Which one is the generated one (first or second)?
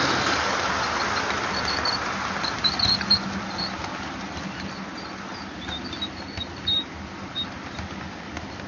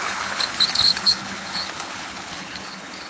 second